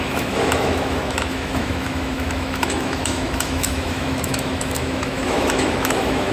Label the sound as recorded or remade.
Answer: remade